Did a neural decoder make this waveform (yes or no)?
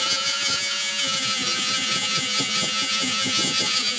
yes